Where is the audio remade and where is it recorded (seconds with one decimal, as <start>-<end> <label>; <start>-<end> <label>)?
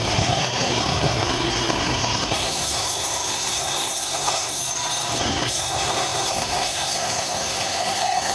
0.0-4.6 remade; 4.6-5.2 recorded; 5.2-8.3 remade